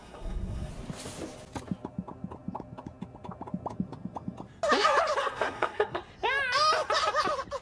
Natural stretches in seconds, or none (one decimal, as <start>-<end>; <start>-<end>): 0.7-5.2; 6.0-7.6